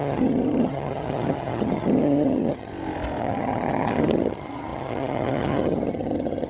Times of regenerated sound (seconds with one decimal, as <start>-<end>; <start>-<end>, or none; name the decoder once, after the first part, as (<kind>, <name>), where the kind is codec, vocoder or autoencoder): 0.0-2.7 (vocoder, HiFi-GAN); 3.2-6.5